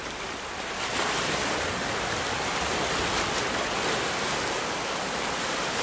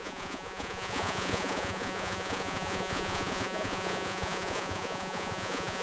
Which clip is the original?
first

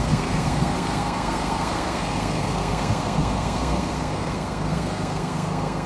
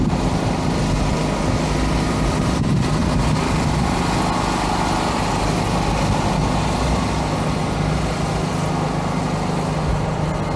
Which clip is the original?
second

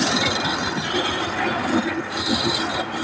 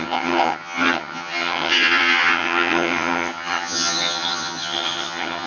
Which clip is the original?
first